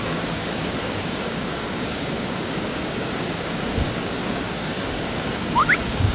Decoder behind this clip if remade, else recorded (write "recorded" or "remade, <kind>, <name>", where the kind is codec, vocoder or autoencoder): remade, codec, DAC